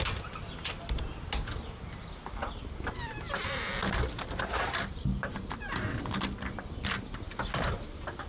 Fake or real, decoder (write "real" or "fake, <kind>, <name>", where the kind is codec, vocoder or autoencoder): real